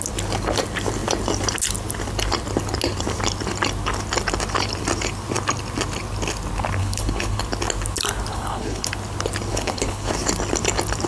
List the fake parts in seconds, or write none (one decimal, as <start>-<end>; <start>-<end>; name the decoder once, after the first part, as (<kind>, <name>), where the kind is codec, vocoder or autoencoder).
6.8-7.4 (codec, HILCodec); 8.3-8.9; 9.5-10.1